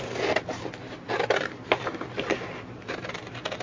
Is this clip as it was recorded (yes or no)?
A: yes